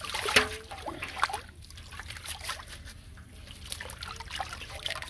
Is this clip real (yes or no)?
yes